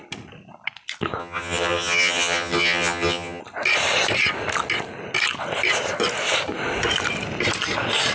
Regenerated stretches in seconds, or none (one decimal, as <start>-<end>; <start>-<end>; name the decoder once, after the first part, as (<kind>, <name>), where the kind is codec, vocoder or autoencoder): 1.2-3.4 (vocoder, HiFi-GAN)